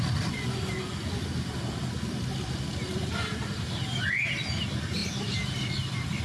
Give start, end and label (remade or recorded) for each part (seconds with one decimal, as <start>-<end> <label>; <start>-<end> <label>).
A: 0.0-6.2 recorded